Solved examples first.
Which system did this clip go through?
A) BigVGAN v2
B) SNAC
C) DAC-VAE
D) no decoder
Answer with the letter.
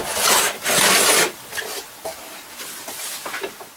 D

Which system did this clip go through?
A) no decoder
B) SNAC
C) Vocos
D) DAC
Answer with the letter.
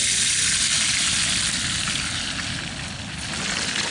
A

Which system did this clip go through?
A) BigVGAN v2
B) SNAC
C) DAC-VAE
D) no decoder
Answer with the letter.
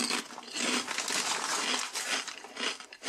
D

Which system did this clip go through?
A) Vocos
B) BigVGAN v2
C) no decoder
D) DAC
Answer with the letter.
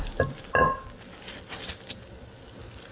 B